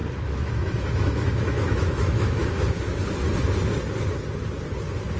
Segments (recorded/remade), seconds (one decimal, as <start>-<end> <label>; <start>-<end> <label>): 0.0-3.1 remade; 3.1-5.2 recorded